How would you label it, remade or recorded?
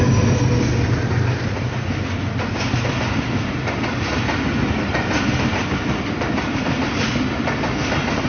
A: recorded